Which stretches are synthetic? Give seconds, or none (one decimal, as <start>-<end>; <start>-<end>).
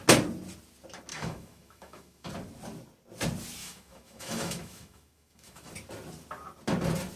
1.1-2.3; 3.6-5.7